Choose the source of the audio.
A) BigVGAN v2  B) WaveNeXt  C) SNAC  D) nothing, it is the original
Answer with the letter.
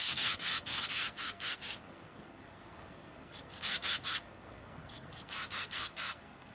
C